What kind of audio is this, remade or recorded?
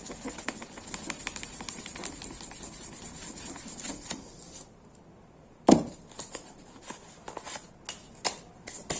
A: recorded